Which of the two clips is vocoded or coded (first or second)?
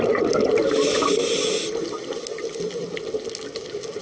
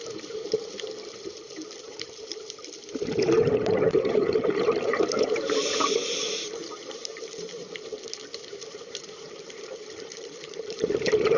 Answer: second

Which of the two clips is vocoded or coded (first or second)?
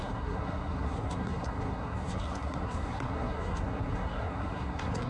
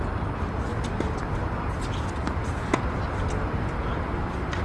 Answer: first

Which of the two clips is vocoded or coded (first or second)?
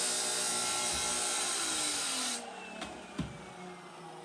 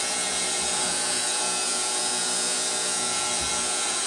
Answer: second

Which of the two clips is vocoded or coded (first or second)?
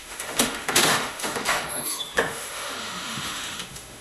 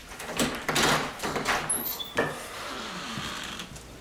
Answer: first